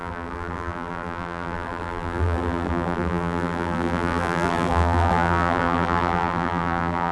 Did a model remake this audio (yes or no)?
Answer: yes